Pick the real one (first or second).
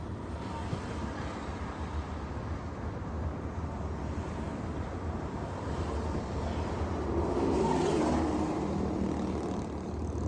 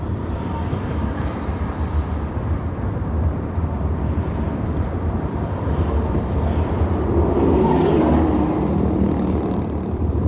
first